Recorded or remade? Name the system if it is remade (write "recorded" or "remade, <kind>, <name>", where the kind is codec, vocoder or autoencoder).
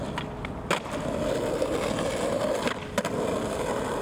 recorded